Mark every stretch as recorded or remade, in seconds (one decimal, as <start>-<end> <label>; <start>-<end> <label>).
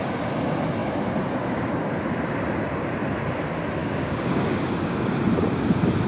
0.0-3.8 recorded; 3.8-5.1 remade; 5.1-6.1 recorded